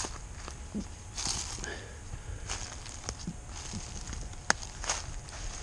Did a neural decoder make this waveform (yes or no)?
no